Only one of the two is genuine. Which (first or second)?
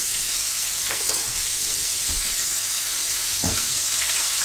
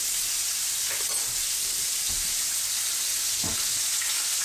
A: second